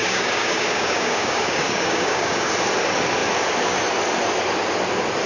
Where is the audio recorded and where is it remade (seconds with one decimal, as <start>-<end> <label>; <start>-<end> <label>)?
0.0-2.5 remade; 2.5-5.3 recorded